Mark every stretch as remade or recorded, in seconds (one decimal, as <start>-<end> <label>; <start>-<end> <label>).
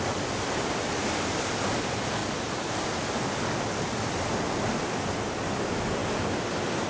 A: 0.0-6.9 recorded